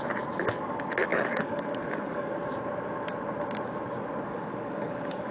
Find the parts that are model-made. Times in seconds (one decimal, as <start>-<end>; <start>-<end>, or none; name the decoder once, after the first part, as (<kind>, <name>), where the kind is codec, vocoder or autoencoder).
1.1-2.3 (codec, DAC); 4.3-5.3